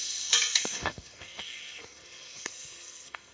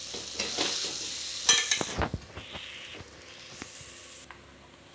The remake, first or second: first